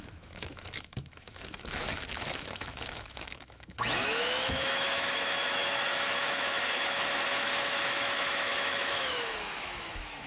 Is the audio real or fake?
fake